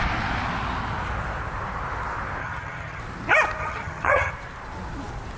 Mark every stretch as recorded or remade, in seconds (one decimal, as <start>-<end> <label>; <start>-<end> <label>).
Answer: 0.0-2.4 recorded; 2.4-3.0 remade; 3.0-3.6 recorded; 3.6-4.3 remade; 4.3-5.4 recorded